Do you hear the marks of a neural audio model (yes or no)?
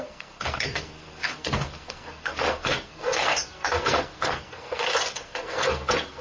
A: yes